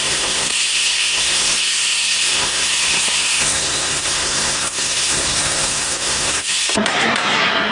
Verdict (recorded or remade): remade